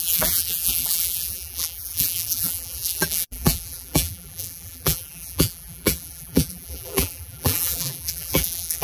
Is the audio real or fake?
fake